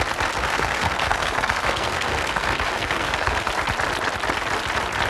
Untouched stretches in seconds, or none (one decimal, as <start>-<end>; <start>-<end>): 0.0-0.4; 3.5-5.1